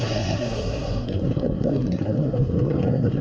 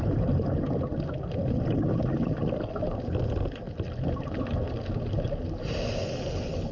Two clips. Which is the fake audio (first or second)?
first